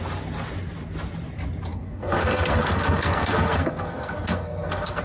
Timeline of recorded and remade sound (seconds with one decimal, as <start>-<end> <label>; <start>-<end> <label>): 0.0-1.7 recorded; 1.7-5.0 remade